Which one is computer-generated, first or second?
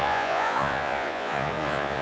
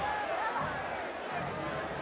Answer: first